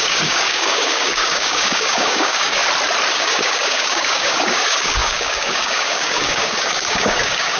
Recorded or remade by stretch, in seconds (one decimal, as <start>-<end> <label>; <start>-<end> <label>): 0.0-2.6 remade; 2.6-3.1 recorded; 3.1-7.6 remade